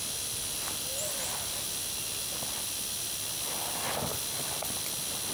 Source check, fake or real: real